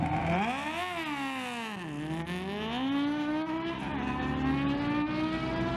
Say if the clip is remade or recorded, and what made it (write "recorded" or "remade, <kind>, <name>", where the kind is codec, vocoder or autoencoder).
recorded